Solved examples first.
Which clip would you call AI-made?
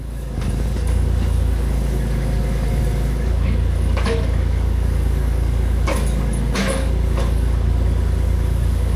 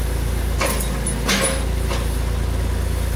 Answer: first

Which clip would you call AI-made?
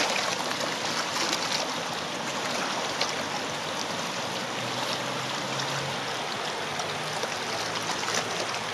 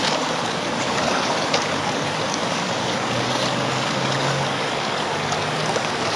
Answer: second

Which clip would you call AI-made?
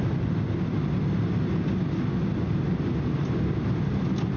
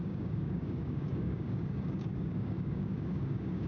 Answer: second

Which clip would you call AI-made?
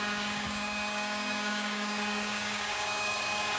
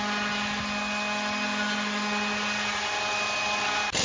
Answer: first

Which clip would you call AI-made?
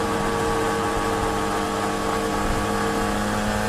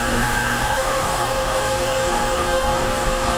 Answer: second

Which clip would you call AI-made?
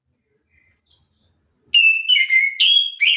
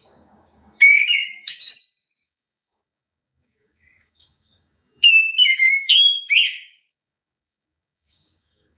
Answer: second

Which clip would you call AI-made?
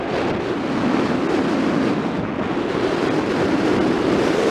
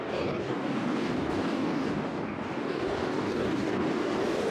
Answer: second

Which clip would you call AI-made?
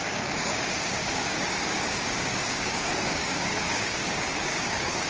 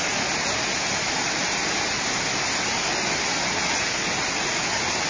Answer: first